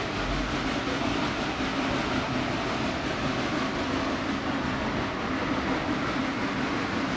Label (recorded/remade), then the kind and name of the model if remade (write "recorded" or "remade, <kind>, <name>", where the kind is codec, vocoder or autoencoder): recorded